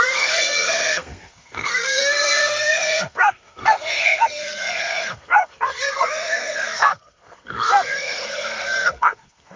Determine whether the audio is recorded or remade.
remade